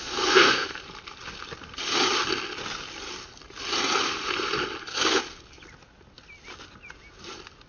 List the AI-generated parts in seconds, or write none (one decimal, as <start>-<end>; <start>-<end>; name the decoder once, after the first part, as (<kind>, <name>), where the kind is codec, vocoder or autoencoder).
0.0-0.8 (codec, SNAC); 4.8-5.2